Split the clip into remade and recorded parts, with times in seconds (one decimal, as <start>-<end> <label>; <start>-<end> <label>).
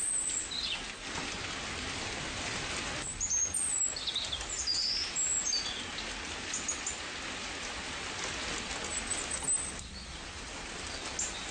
0.0-11.5 recorded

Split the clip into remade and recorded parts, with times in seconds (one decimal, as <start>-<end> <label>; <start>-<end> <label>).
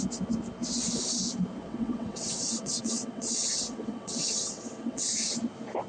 0.0-1.6 recorded; 1.6-5.1 remade; 5.1-5.9 recorded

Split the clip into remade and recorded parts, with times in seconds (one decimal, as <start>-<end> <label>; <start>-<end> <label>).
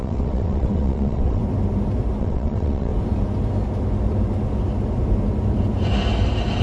0.0-1.4 remade; 1.4-2.2 recorded; 2.2-2.9 remade; 2.9-6.6 recorded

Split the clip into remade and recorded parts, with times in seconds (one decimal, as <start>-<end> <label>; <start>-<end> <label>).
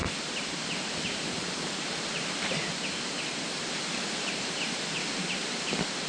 0.0-6.1 recorded